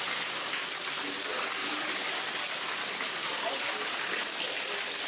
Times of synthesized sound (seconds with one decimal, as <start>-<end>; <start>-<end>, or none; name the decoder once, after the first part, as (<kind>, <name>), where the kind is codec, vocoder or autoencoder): 1.6-3.6 (vocoder, BigVGAN v2)